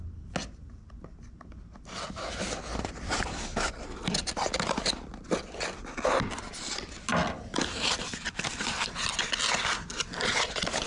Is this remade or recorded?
recorded